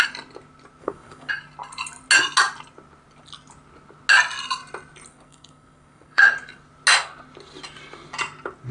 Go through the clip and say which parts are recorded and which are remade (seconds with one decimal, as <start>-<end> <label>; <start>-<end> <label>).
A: 0.0-0.8 recorded; 0.8-1.3 remade; 1.3-5.1 recorded; 5.1-6.3 remade; 6.3-8.7 recorded